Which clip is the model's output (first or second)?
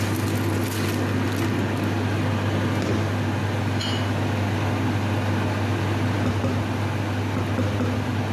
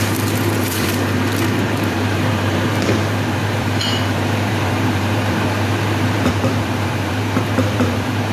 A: second